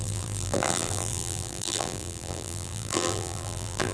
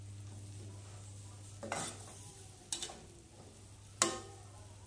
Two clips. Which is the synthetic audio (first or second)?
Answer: first